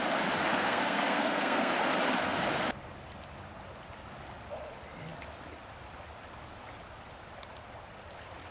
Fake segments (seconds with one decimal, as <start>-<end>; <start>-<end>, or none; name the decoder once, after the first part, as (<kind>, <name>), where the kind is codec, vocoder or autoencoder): 0.5-1.7 (codec, SNAC)